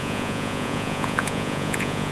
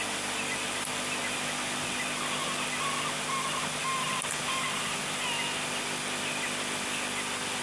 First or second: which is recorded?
second